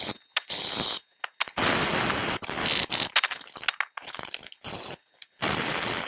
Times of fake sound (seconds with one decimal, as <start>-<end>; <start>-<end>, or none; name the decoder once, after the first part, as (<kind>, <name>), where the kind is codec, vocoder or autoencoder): none